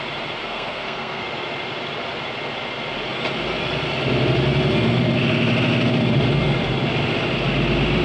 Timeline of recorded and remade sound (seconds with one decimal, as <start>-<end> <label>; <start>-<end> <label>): 0.0-0.4 recorded; 0.4-1.2 remade; 1.2-8.0 recorded